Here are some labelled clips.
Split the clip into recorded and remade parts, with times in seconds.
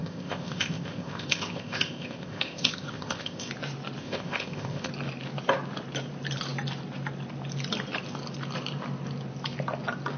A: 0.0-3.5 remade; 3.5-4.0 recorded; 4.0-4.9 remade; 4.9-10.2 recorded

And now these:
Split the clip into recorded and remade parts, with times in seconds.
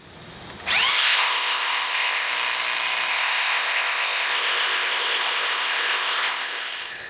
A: 0.0-0.9 recorded; 0.9-2.3 remade; 2.3-3.1 recorded; 3.1-7.1 remade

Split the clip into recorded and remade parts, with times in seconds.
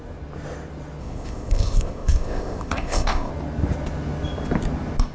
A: 0.0-1.0 recorded; 1.0-3.3 remade; 3.3-5.1 recorded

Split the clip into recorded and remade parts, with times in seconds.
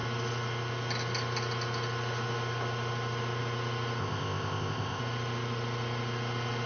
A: 0.0-4.0 recorded; 4.0-5.0 remade; 5.0-6.7 recorded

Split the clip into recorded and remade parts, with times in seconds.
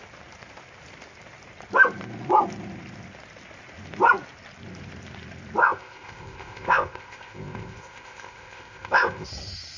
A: 0.0-5.6 recorded; 5.6-9.3 remade; 9.3-9.8 recorded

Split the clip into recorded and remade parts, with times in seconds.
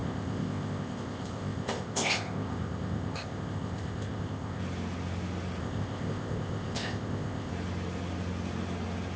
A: 0.0-4.6 remade; 4.6-5.6 recorded; 5.6-7.5 remade; 7.5-9.2 recorded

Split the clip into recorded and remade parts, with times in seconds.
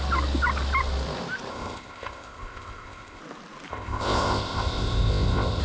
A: 0.0-1.5 recorded; 1.5-3.2 remade; 3.2-3.7 recorded; 3.7-5.6 remade